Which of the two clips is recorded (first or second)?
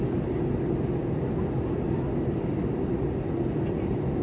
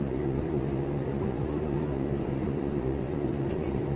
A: first